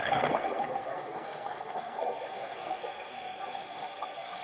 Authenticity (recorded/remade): remade